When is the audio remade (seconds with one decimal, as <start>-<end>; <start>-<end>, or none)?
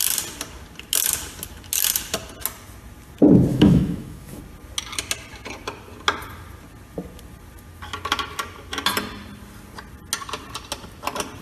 3.5-4.4